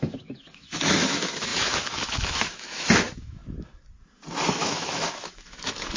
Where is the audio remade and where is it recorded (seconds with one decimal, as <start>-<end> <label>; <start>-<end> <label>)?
0.0-3.4 remade; 3.4-4.5 recorded; 4.5-6.0 remade